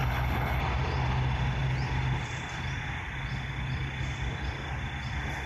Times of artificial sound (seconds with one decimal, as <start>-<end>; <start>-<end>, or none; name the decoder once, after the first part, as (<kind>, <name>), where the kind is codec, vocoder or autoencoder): 0.0-0.6 (codec, HILCodec)